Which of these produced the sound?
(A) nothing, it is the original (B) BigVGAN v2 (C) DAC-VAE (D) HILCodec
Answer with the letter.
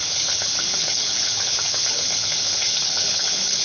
D